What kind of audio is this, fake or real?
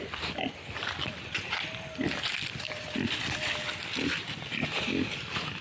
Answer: real